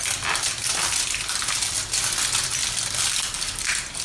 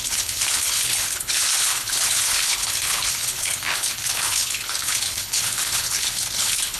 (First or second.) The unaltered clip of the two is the first